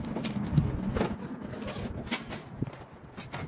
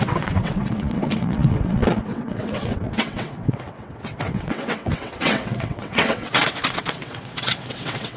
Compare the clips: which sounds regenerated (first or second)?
second